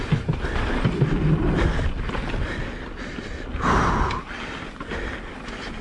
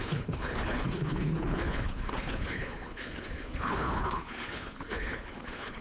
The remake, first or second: second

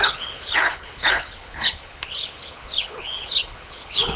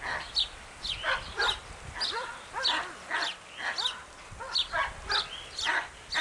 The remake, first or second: first